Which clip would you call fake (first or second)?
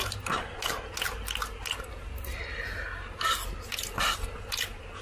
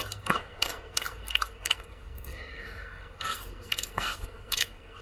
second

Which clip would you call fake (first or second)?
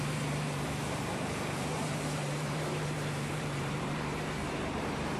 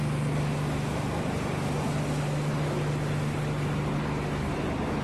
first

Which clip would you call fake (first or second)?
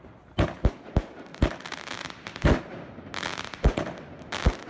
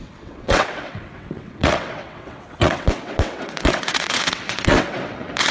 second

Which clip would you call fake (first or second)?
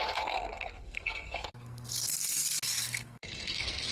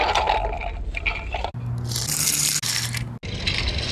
first